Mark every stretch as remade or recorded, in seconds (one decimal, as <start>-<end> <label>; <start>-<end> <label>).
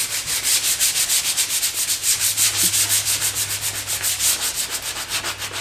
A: 0.0-2.0 recorded; 2.0-2.7 remade; 2.7-5.6 recorded